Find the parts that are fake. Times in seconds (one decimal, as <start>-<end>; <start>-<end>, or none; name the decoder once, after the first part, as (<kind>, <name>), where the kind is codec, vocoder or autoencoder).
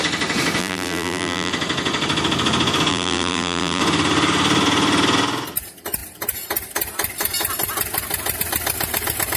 0.6-1.5 (vocoder, BigVGAN v2); 2.9-3.8